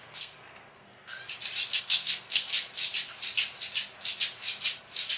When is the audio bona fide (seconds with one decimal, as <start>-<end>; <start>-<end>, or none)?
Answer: 1.2-1.8; 2.5-5.2